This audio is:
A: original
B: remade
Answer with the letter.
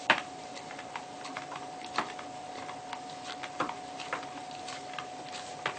A